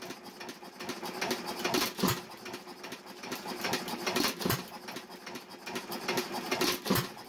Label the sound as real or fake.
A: real